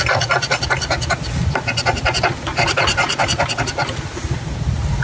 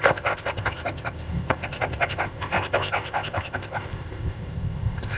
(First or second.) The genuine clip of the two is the first